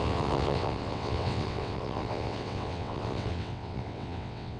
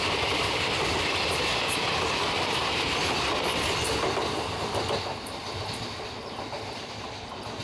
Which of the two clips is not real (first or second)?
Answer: first